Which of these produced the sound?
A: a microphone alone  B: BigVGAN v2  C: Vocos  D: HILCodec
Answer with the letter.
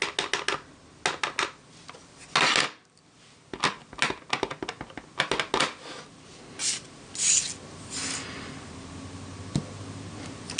A